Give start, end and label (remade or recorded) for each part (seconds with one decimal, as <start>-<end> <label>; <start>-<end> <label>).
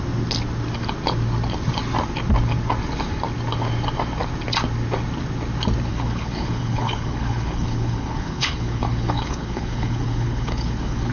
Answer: 0.0-5.9 recorded; 5.9-11.1 remade